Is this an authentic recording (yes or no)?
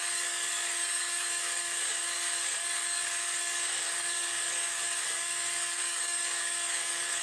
no